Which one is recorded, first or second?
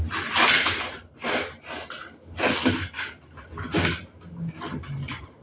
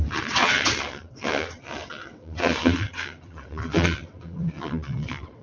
first